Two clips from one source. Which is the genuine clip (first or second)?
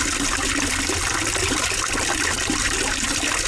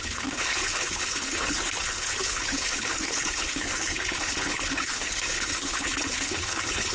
first